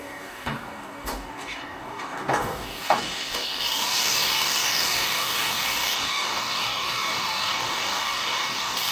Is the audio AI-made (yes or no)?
yes